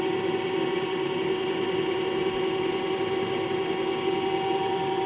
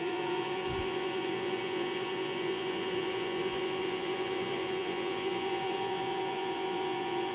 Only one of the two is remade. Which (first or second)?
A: second